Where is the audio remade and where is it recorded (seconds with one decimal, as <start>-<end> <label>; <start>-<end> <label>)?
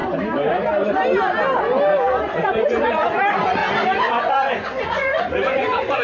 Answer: 0.0-2.4 recorded; 2.4-3.6 remade; 3.6-4.1 recorded; 4.1-6.0 remade